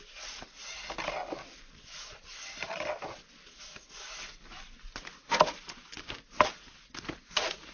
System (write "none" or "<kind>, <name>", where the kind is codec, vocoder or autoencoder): none